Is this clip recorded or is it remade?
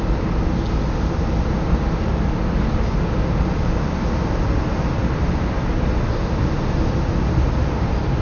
recorded